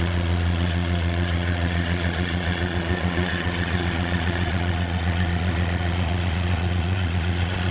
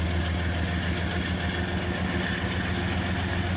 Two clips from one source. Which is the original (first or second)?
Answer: second